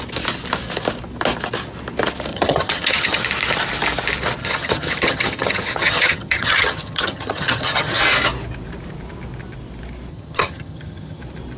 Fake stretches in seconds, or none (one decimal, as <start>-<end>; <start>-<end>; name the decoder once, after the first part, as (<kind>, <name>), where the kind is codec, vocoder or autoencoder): 2.3-3.2 (vocoder, HiFi-GAN); 4.4-8.0; 10.1-11.2